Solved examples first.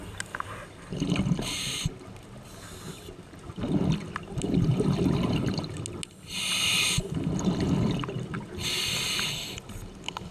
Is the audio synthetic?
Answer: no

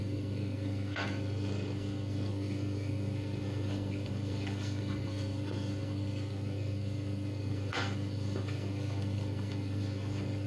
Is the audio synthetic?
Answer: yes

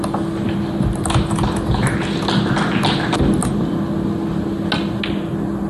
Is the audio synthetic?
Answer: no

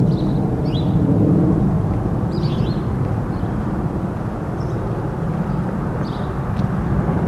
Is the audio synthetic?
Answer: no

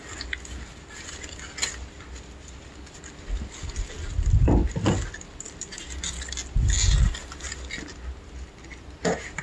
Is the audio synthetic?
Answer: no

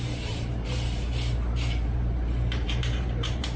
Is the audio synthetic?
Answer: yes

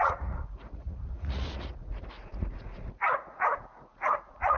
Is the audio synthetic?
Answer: yes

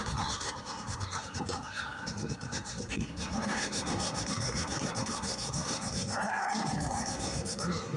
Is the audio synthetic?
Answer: yes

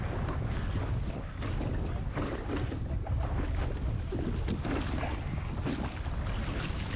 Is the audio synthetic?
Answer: no